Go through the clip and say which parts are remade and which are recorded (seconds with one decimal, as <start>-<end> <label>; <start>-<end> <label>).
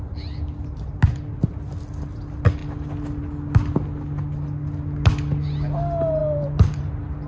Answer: 0.0-7.3 recorded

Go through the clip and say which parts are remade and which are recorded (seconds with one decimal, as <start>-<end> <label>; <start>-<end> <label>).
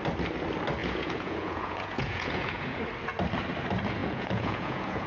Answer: 0.0-0.8 recorded; 0.8-2.8 remade; 2.8-4.0 recorded; 4.0-5.1 remade